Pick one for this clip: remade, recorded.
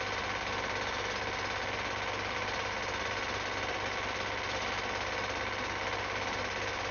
recorded